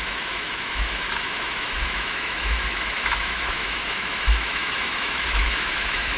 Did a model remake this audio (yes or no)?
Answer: yes